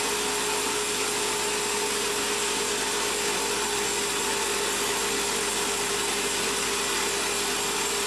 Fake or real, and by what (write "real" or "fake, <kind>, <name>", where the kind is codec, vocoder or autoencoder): real